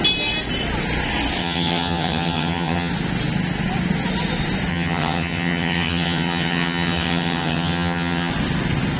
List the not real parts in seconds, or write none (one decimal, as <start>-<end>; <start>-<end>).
1.4-2.9; 4.7-8.3